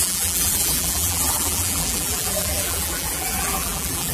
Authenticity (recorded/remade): remade